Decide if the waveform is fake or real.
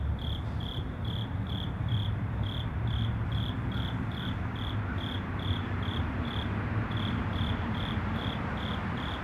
fake